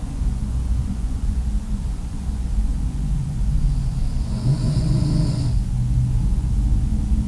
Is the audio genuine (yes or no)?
no